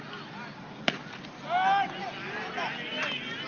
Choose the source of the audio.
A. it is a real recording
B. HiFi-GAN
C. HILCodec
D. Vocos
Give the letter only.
A